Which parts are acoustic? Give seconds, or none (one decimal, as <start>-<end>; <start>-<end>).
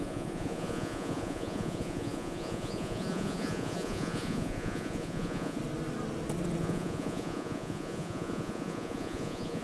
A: 5.6-6.6